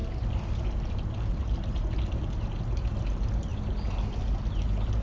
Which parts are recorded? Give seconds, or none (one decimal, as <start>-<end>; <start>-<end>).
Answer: 0.0-5.0